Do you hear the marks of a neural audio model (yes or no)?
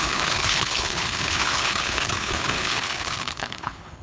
yes